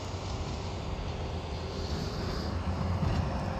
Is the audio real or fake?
real